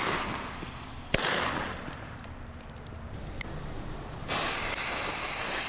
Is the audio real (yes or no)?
yes